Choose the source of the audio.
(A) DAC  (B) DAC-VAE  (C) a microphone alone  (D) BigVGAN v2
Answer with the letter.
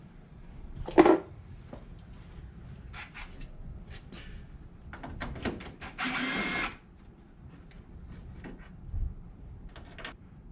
C